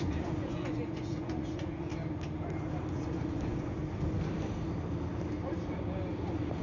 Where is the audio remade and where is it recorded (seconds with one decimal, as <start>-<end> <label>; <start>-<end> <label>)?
0.0-1.9 remade; 1.9-2.9 recorded; 2.9-3.8 remade; 3.8-6.6 recorded